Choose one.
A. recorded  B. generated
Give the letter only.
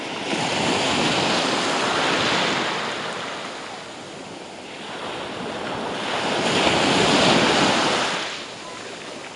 A